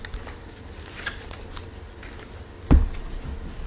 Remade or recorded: recorded